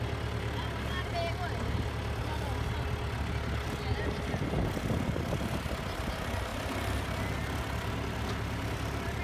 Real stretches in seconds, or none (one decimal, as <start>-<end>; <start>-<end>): 0.0-9.2

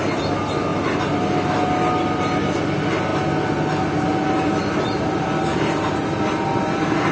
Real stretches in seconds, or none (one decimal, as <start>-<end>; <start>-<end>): 0.0-7.1

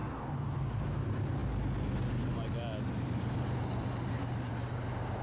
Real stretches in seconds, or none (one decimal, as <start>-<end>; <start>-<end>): 0.0-5.2

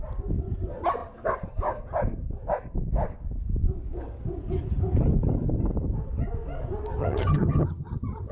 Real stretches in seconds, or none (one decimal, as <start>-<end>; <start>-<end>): 0.0-7.0

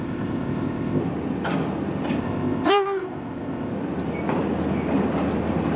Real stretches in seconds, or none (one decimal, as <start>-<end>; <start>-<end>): 1.0-2.2; 3.7-5.8

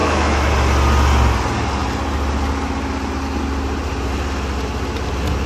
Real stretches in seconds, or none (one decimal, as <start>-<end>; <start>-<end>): 0.5-5.5